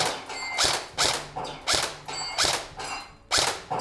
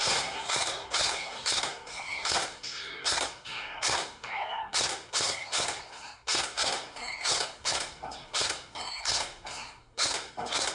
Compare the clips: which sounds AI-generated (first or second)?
second